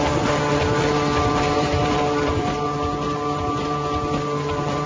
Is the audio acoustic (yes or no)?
no